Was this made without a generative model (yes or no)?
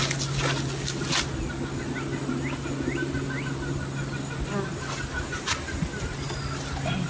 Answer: yes